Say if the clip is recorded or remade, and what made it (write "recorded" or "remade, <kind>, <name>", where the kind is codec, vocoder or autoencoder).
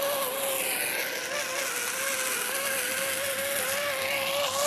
recorded